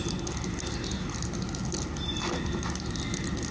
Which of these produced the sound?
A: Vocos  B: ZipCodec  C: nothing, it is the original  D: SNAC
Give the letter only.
C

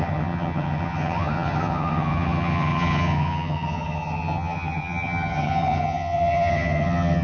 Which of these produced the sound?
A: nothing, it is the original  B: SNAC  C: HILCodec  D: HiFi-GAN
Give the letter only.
D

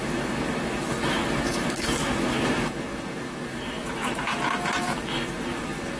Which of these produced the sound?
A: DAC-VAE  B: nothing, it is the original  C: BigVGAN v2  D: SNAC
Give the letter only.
A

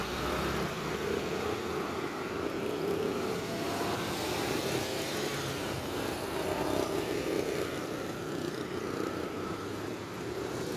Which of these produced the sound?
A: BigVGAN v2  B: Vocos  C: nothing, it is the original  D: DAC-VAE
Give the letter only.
A